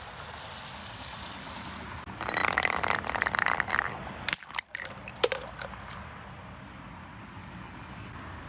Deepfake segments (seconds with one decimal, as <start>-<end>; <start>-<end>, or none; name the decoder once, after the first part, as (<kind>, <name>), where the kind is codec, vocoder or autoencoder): 0.8-1.5 (codec, DAC); 7.4-8.1